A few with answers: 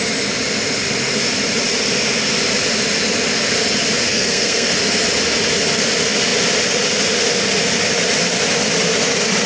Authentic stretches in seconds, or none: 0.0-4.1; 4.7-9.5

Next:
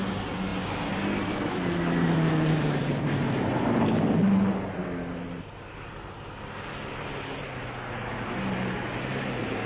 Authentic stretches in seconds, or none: 0.0-9.7

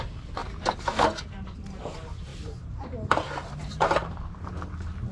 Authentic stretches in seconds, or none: 0.0-0.4; 1.0-2.3; 4.5-5.1

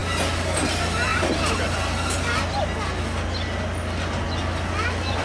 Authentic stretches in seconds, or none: 0.0-5.2

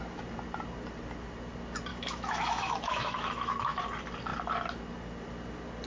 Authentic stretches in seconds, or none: 0.0-1.9; 3.8-5.9